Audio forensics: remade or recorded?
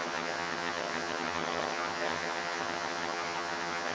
remade